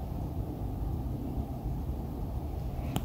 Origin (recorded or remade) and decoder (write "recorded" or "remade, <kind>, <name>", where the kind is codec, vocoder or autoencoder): recorded